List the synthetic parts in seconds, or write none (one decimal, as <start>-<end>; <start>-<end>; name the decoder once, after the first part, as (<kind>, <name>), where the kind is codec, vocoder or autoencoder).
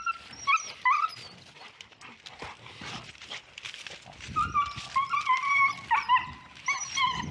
none